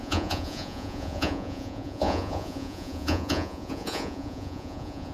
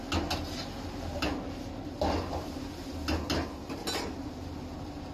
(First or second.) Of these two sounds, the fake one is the first